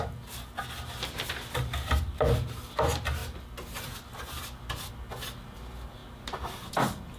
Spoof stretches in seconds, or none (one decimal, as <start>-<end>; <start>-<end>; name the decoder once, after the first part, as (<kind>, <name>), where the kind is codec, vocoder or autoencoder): none